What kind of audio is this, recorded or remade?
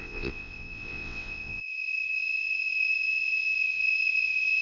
remade